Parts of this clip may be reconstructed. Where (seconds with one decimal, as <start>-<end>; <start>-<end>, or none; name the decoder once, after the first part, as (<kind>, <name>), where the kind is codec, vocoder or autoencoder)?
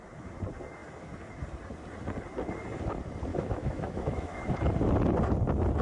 3.3-4.5 (autoencoder, DAC-VAE)